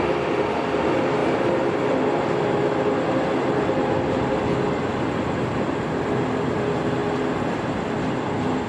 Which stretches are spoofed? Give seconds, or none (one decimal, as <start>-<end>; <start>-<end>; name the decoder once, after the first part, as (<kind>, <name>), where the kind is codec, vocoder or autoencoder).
none

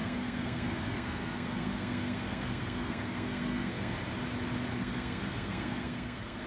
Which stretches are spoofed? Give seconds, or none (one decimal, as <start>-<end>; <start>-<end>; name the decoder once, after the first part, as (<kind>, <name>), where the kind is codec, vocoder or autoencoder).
0.0-3.9 (codec, SNAC); 4.7-6.5